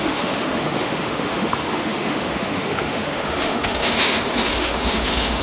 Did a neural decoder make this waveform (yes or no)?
yes